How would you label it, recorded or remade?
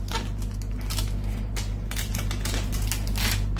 recorded